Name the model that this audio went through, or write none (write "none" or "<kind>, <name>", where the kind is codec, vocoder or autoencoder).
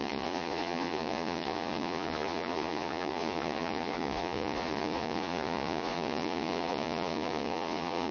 vocoder, Vocos